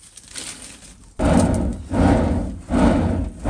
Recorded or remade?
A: recorded